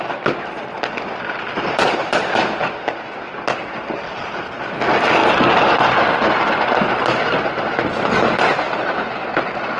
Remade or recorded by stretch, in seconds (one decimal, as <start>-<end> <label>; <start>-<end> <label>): 0.0-9.8 recorded